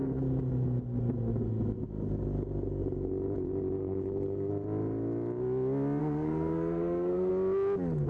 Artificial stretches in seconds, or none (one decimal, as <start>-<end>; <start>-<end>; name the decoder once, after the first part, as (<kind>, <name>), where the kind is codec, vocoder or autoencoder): 3.8-4.5 (codec, SNAC); 6.0-7.3